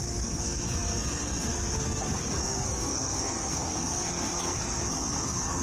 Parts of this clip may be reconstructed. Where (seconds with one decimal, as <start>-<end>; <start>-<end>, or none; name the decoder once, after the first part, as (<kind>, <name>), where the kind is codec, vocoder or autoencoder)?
0.0-5.6 (codec, SNAC)